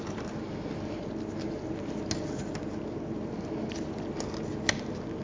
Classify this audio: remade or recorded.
recorded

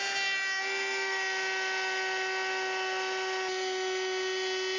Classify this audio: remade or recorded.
recorded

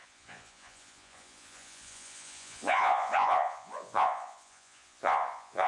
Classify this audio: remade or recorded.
remade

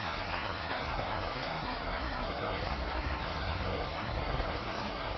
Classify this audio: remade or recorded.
remade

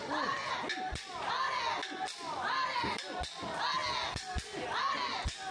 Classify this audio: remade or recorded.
recorded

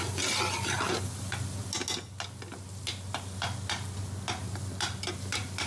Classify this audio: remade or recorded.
recorded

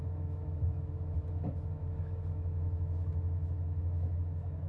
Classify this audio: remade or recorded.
remade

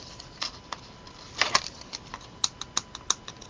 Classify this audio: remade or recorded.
recorded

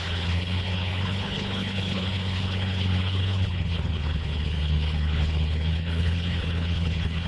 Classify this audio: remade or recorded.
remade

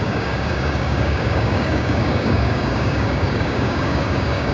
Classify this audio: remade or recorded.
remade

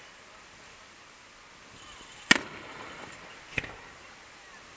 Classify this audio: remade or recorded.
recorded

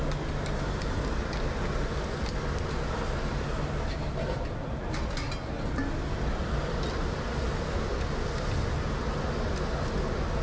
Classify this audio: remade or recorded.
recorded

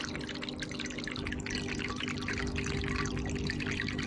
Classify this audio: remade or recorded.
recorded